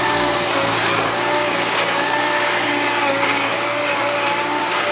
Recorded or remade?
remade